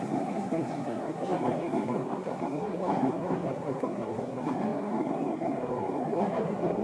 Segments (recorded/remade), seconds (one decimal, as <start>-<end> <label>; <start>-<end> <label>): 0.0-6.8 remade